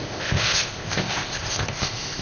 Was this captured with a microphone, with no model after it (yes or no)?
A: no